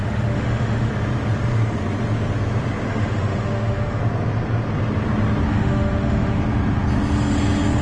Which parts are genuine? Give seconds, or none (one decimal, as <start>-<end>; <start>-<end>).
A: 0.9-2.9; 4.0-5.5; 6.4-7.8